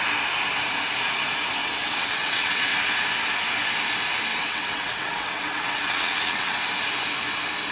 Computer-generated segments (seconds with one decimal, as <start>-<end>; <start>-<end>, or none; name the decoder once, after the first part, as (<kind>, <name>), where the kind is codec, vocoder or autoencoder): 1.6-2.7 (vocoder, WaveNeXt); 4.3-6.6